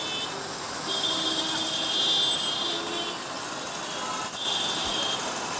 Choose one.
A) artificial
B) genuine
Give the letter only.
B